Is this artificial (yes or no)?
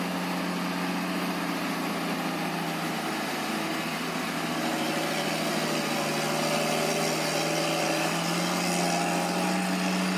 no